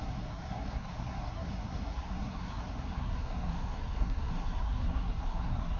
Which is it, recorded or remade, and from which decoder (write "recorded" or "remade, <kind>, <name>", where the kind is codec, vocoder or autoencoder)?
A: remade, codec, SNAC